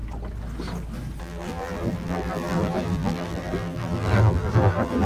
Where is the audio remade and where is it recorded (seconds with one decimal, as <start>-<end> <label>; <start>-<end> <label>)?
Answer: 0.0-1.2 recorded; 1.2-5.1 remade